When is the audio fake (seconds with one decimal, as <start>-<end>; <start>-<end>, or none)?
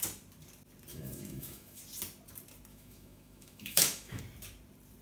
0.9-1.8; 2.7-4.2